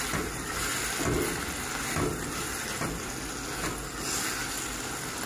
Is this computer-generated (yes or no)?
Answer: no